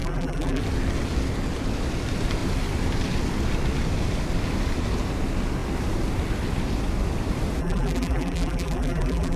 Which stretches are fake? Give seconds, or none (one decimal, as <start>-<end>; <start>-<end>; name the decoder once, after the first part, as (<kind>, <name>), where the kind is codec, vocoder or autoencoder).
0.0-0.6 (vocoder, BigVGAN v2); 7.6-9.4